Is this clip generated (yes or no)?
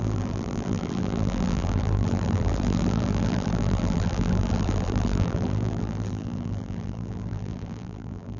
yes